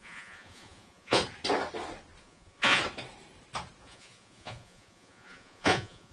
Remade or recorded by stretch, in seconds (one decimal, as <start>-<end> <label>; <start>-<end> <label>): 0.0-1.2 remade; 1.2-2.2 recorded; 2.2-2.8 remade; 2.8-3.8 recorded; 3.8-6.1 remade